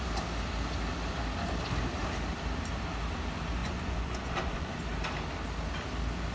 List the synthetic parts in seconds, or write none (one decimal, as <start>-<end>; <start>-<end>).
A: 3.6-4.8